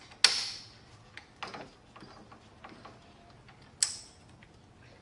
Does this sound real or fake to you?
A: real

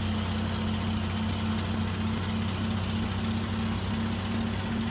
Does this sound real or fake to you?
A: real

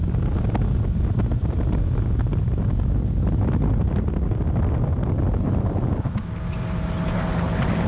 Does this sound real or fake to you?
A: real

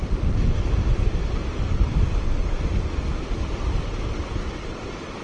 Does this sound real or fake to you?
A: real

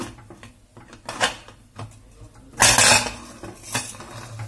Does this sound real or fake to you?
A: real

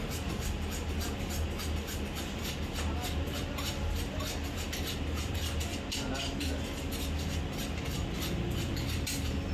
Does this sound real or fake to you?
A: real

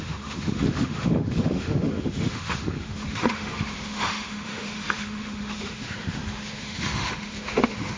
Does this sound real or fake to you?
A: fake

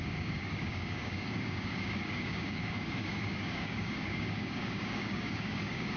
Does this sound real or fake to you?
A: fake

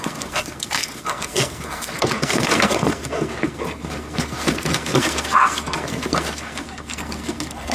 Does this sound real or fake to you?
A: fake